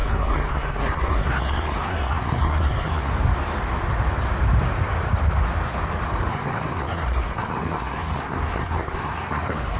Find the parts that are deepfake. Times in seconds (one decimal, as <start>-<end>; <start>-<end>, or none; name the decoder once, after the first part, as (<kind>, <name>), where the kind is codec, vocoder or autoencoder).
0.0-3.1 (codec, SNAC); 6.3-9.8